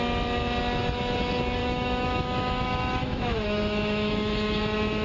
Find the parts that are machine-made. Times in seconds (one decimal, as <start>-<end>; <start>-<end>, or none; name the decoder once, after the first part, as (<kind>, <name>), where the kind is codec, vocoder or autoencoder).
1.6-4.6 (autoencoder, DAC-VAE)